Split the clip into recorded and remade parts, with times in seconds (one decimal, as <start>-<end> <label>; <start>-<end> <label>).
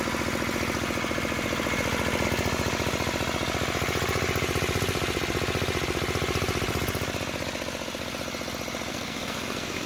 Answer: 0.0-8.9 recorded; 8.9-9.9 remade